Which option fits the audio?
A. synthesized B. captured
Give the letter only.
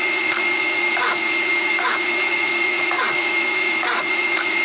A